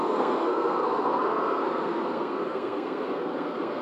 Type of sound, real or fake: fake